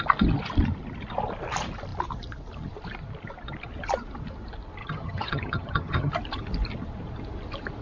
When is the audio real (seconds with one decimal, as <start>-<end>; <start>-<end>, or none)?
0.0-4.8; 6.1-7.8